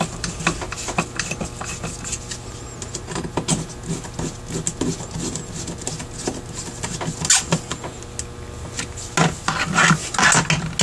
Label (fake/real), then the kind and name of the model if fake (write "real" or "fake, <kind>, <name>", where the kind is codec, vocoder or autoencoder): real